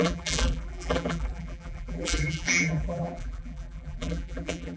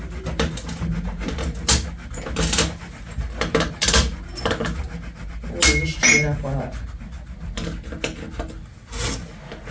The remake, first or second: first